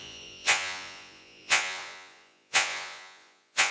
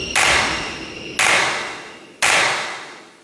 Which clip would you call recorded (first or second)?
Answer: second